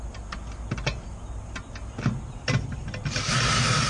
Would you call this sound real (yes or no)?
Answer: yes